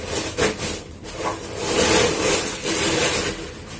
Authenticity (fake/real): real